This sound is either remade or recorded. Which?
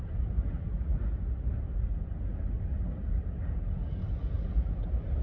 recorded